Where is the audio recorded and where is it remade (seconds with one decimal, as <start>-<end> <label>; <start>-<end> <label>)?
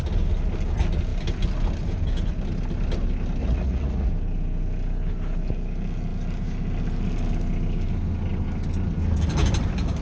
0.0-3.4 recorded; 3.4-4.1 remade; 4.1-10.0 recorded